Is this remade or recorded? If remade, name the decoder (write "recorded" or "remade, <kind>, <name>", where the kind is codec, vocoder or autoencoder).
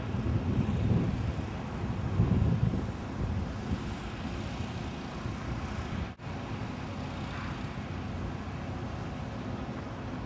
recorded